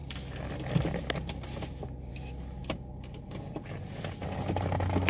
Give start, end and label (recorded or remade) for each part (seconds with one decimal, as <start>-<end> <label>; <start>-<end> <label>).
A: 0.0-5.1 recorded